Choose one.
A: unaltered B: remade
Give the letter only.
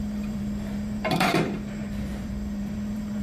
B